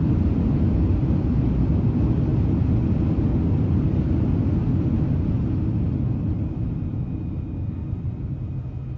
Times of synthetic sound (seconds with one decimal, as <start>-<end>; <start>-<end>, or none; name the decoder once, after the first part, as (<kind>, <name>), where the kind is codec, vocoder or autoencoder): none